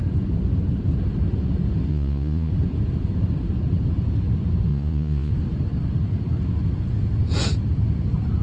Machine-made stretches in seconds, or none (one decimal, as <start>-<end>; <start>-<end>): 1.9-2.5; 4.7-5.3